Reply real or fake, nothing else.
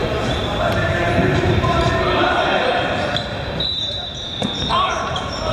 fake